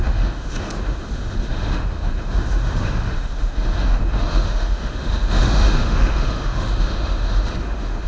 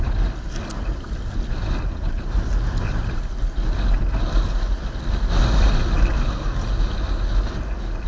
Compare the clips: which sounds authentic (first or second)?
second